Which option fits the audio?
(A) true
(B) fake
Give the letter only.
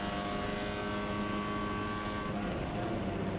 A